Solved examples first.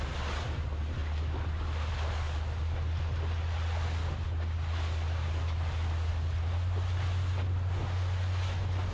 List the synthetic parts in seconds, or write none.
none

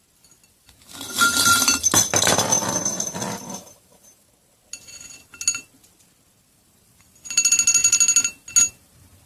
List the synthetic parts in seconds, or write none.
none